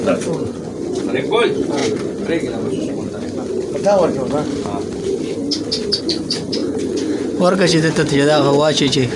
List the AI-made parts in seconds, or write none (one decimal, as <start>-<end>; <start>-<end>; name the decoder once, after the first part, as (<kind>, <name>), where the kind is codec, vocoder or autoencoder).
0.0-1.8 (vocoder, Vocos); 6.0-9.2